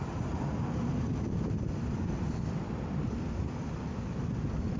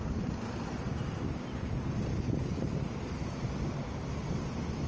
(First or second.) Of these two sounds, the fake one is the second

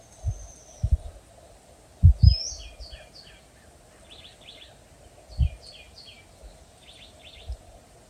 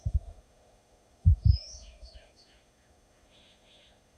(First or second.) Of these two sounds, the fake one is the second